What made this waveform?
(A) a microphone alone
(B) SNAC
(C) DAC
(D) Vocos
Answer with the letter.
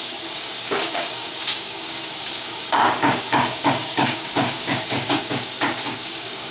C